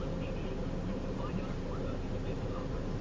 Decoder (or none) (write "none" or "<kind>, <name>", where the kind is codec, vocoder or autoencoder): vocoder, BigVGAN v2